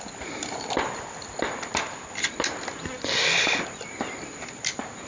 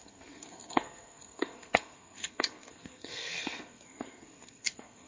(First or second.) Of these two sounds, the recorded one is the first